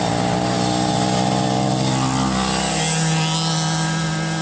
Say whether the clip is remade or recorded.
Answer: recorded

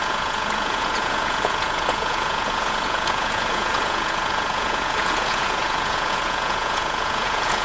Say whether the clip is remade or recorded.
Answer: remade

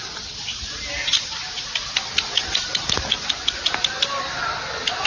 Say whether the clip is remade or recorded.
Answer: recorded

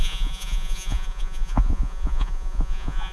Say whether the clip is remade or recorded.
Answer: remade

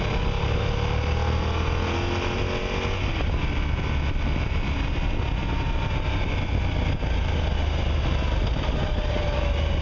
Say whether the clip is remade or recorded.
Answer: recorded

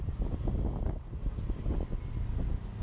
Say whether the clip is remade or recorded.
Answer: recorded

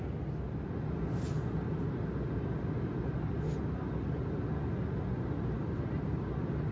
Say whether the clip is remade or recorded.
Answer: recorded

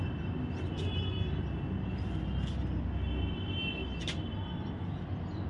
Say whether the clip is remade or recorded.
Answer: recorded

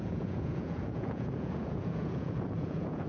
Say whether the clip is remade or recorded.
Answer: remade